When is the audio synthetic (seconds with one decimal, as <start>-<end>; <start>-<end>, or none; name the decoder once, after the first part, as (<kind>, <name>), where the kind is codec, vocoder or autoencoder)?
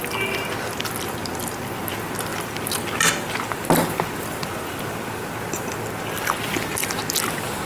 none